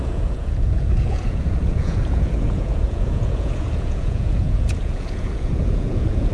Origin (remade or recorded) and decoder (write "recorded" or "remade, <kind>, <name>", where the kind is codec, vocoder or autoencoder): remade, vocoder, Vocos